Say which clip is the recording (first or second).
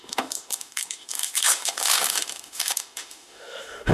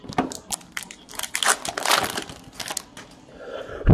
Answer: second